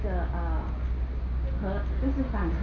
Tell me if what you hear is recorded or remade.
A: recorded